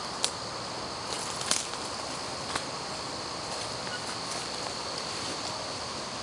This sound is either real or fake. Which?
real